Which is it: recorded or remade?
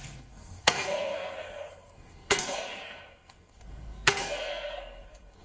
remade